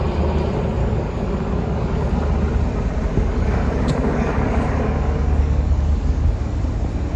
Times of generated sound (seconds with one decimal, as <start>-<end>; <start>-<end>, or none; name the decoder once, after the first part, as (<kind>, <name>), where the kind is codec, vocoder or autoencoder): 0.8-2.1 (codec, DAC); 3.1-6.6